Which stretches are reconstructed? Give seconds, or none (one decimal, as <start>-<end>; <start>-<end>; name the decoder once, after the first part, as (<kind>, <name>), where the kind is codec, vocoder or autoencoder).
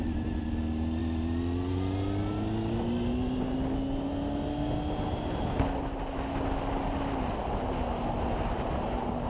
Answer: none